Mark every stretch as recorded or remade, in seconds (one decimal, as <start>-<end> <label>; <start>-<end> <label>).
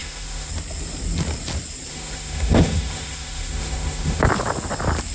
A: 0.0-0.5 remade; 0.5-1.9 recorded; 1.9-4.2 remade; 4.2-5.1 recorded